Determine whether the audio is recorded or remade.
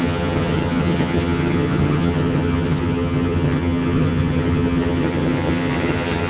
remade